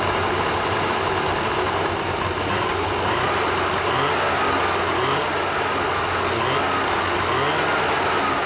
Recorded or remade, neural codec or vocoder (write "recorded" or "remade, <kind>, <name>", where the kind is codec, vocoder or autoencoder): recorded